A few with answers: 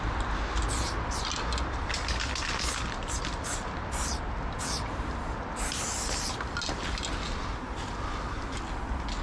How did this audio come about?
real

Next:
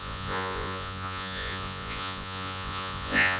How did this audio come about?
fake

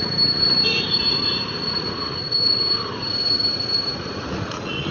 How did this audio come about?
fake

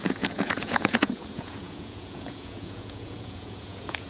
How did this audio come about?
fake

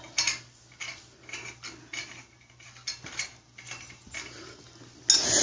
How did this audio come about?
real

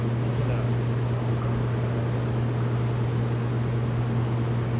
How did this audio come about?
real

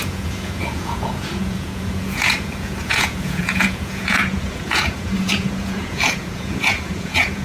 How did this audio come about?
fake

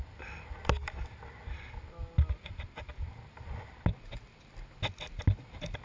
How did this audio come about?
real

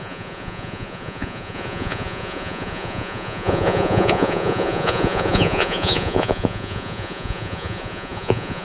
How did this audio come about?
fake